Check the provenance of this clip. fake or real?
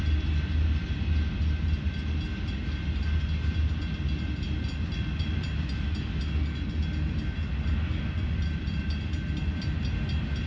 real